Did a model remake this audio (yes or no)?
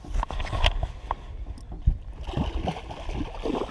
no